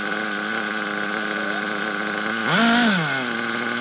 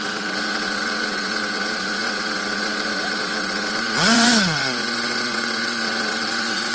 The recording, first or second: first